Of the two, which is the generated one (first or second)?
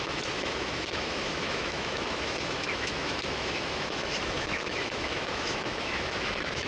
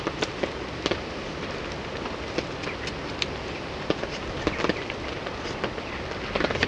first